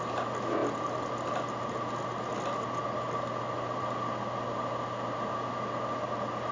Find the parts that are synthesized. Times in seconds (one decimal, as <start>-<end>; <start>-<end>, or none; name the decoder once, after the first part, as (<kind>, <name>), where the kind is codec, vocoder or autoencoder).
none